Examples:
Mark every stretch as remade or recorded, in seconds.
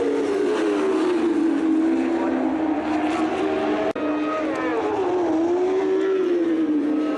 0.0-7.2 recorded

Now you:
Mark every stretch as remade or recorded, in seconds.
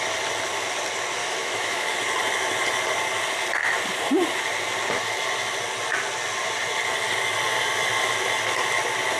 0.0-1.2 recorded; 1.2-2.0 remade; 2.0-9.2 recorded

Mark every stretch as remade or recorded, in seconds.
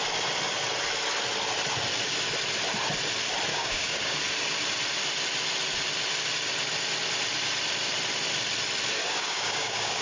0.0-3.5 recorded; 3.5-4.2 remade; 4.2-9.0 recorded; 9.0-10.0 remade